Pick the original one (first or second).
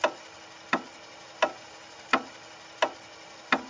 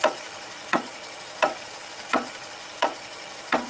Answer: first